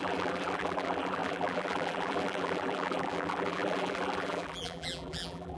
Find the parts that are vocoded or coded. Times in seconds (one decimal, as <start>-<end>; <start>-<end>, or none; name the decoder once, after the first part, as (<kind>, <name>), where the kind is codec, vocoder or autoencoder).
0.0-5.6 (vocoder, BigVGAN v2)

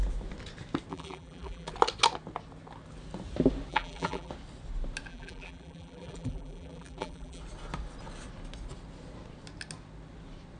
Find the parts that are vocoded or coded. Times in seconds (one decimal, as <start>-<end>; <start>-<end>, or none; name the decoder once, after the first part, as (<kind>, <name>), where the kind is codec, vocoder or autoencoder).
0.9-1.7 (vocoder, BigVGAN v2); 3.7-4.3; 5.1-7.4

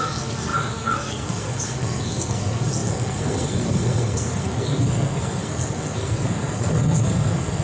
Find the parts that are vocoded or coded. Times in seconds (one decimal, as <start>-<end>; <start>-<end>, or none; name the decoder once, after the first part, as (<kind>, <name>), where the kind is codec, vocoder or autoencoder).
0.0-7.6 (codec, SNAC)

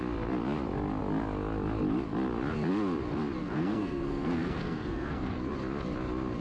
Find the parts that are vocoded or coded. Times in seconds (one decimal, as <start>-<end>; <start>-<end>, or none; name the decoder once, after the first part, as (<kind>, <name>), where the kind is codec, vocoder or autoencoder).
3.4-5.5 (codec, SNAC)

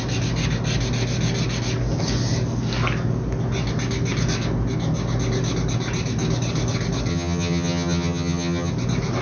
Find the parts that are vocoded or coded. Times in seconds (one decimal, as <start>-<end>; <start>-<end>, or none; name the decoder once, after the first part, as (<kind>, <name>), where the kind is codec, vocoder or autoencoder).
7.1-8.7 (vocoder, HiFi-GAN)